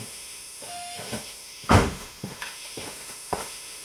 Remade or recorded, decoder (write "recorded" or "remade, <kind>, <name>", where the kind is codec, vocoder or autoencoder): remade, autoencoder, DAC-VAE